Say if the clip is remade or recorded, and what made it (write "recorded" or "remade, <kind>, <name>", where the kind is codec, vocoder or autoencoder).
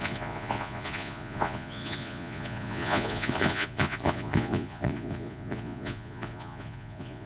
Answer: remade, vocoder, Vocos